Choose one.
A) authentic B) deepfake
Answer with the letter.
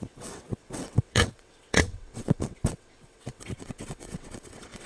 B